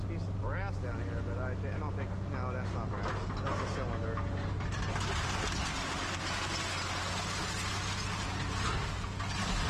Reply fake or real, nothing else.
real